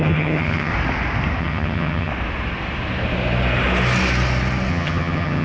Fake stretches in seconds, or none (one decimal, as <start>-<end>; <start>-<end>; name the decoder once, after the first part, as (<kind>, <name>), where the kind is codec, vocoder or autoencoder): 0.0-0.7 (vocoder, HiFi-GAN); 1.4-2.1; 4.7-5.4